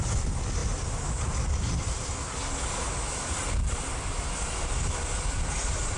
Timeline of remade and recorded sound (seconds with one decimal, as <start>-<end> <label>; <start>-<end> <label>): 0.0-6.0 recorded